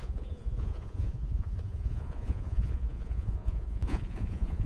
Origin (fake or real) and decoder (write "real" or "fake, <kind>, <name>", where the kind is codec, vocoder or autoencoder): fake, vocoder, Vocos